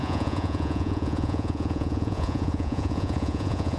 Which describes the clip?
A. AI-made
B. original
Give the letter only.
A